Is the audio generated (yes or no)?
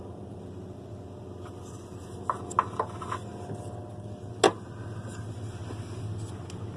no